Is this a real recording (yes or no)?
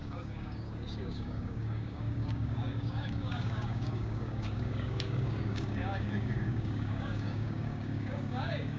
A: no